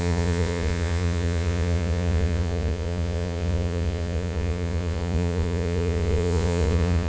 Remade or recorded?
remade